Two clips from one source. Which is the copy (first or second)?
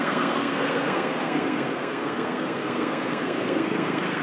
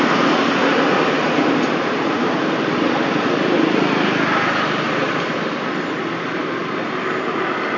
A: first